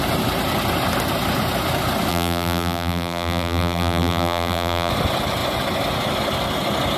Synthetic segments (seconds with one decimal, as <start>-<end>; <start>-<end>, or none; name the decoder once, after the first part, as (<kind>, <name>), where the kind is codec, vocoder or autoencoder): 2.1-4.9 (vocoder, BigVGAN v2)